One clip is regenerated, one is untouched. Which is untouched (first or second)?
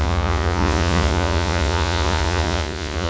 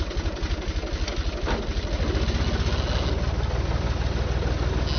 second